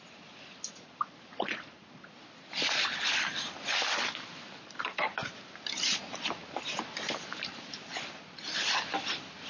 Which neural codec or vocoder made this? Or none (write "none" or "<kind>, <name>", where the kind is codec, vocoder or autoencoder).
none